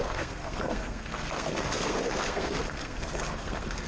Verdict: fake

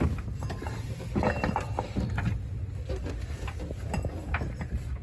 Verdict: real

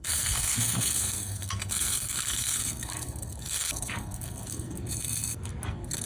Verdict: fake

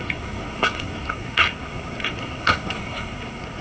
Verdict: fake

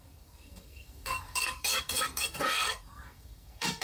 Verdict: fake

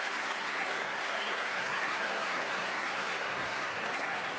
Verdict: fake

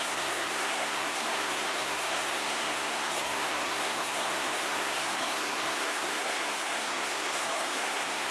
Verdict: fake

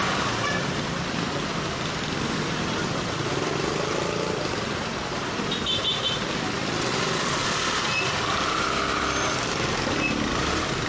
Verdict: real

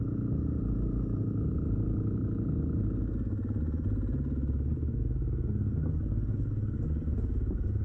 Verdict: real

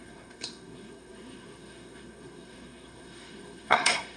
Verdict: fake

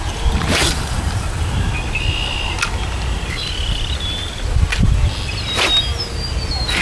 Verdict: real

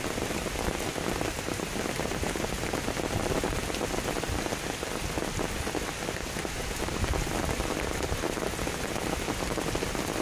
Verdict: real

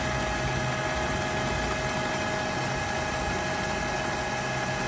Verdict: real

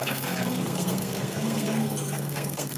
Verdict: fake